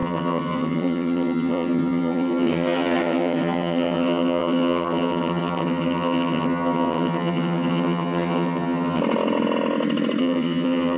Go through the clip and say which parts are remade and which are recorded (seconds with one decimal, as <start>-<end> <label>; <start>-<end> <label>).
0.0-9.0 remade; 9.0-10.2 recorded; 10.2-11.0 remade